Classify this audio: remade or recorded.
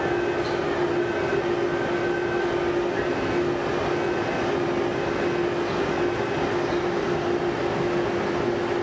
recorded